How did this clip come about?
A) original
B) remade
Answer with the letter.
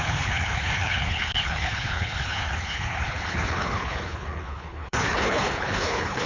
B